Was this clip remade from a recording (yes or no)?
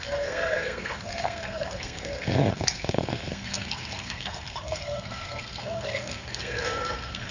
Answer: yes